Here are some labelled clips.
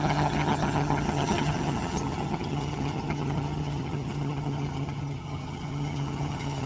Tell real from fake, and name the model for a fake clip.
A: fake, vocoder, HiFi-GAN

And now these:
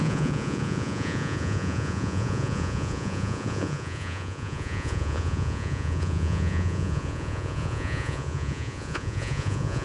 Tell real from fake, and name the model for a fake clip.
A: fake, vocoder, Vocos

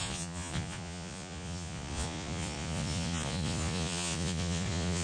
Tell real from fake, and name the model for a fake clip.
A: fake, vocoder, Vocos